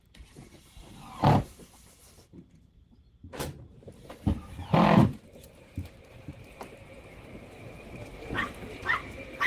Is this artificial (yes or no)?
yes